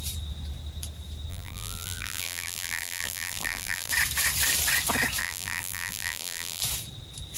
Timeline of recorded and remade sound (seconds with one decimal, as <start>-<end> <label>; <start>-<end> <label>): 0.0-1.3 recorded; 1.3-3.9 remade; 3.9-5.2 recorded; 5.2-6.6 remade; 6.6-7.4 recorded